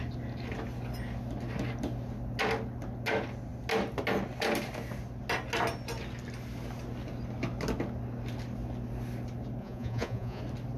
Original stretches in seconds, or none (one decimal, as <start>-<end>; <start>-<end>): 0.0-9.6; 10.4-10.8